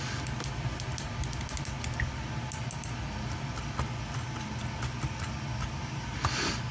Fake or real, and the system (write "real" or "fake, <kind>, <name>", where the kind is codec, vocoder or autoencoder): real